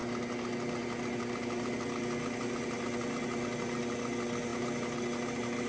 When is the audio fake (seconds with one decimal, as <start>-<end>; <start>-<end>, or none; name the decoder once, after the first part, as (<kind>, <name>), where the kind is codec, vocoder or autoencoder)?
none